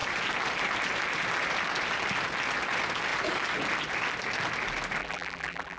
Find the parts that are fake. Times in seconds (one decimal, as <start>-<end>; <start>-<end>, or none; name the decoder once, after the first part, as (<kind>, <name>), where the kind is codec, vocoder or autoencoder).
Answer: 5.0-5.8 (vocoder, BigVGAN v2)